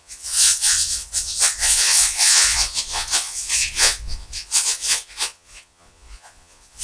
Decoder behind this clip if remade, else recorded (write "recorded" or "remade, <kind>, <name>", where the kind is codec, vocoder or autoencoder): remade, vocoder, Vocos